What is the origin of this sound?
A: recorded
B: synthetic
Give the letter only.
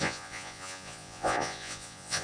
B